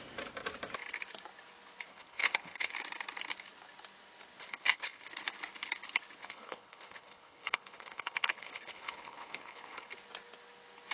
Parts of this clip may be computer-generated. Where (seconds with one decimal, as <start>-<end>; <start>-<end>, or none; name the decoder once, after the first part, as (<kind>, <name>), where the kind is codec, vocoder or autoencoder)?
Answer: 1.9-2.7 (codec, HILCodec); 4.4-5.0; 6.2-9.9